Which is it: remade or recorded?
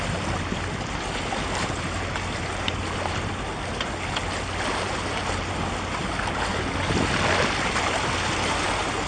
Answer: recorded